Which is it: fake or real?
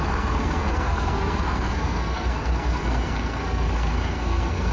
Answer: fake